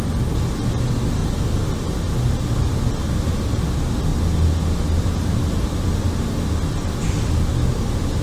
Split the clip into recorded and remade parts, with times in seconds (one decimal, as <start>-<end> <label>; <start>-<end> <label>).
0.0-8.2 recorded